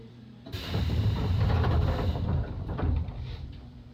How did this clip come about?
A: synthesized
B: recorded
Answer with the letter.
A